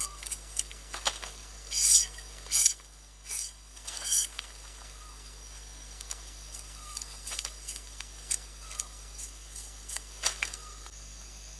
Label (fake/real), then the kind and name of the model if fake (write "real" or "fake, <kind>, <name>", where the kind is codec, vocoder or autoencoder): fake, codec, SNAC